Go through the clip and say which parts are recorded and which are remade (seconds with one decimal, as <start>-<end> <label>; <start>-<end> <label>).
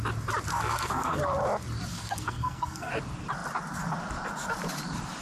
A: 0.0-0.5 recorded; 0.5-1.2 remade; 1.2-1.9 recorded; 1.9-2.9 remade; 2.9-5.2 recorded